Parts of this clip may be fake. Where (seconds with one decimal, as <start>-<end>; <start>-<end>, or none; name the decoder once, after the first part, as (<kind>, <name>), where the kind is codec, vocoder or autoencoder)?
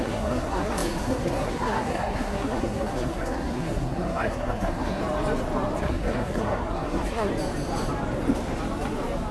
0.0-5.0 (codec, SNAC); 5.8-7.3